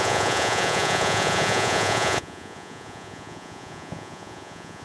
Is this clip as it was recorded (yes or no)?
no